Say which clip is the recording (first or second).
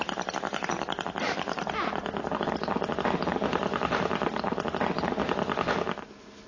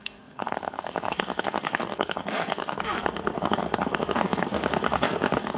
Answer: first